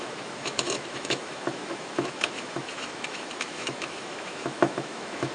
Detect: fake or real fake